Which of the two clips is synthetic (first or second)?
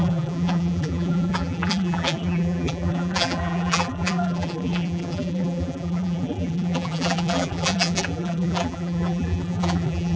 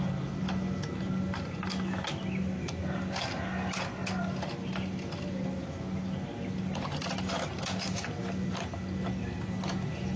first